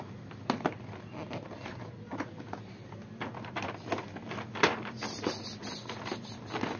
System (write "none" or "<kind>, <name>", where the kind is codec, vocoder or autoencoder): none